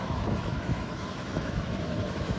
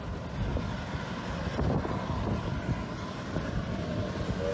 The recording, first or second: second